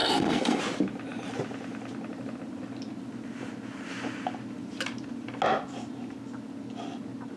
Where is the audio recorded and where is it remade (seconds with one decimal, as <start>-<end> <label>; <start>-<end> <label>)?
0.0-0.6 remade; 0.6-7.4 recorded